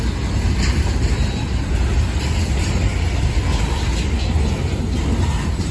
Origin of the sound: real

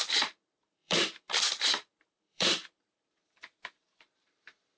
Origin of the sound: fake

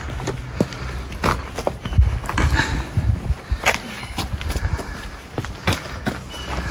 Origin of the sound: real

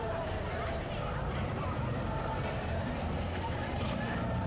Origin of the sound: fake